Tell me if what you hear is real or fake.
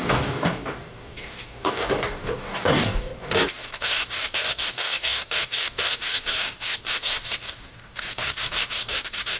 fake